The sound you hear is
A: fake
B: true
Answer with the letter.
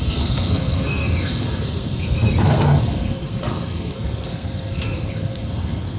A